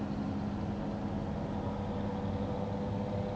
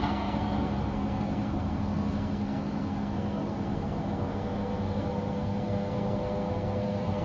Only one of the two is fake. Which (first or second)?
second